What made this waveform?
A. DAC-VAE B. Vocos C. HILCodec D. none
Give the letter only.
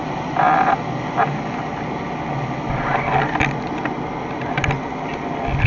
D